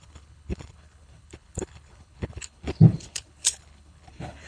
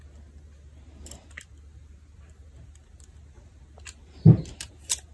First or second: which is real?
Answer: second